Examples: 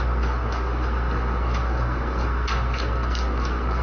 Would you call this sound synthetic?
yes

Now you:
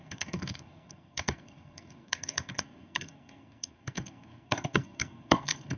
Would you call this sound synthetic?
yes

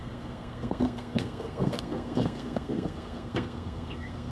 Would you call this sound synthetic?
yes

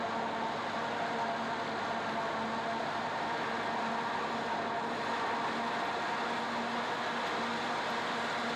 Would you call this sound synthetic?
no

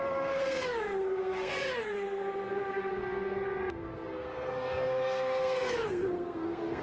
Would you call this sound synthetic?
yes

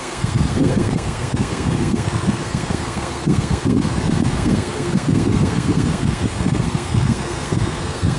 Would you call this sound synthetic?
yes